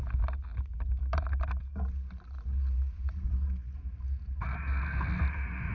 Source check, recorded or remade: recorded